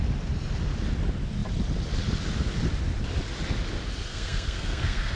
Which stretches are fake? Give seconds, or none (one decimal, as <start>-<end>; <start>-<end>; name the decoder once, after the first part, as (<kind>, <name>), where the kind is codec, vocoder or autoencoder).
4.1-5.2 (codec, SNAC)